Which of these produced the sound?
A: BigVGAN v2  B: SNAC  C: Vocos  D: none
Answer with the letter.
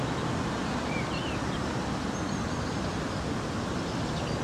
D